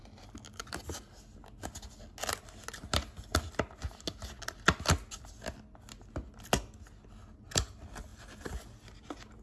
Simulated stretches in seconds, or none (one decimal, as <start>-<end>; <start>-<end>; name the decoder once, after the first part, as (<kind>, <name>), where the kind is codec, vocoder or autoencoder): none